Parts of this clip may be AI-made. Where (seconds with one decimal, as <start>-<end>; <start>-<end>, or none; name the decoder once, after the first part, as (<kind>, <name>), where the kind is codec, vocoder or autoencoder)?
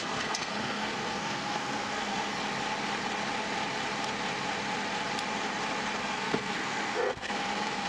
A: 0.0-2.3 (codec, SNAC); 6.0-7.9